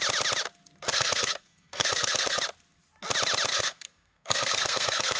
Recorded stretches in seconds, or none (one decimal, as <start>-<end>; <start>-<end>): 0.0-0.9; 2.4-3.5